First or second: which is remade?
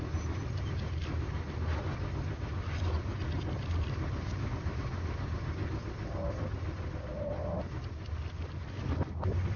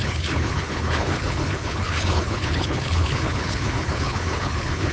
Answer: second